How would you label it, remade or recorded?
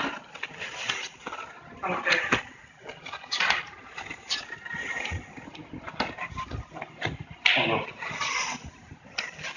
recorded